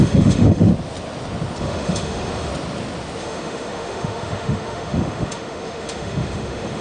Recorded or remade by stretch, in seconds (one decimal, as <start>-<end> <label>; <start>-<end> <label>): 0.0-0.7 remade; 0.7-1.6 recorded; 1.6-2.5 remade; 2.5-3.2 recorded; 3.2-6.8 remade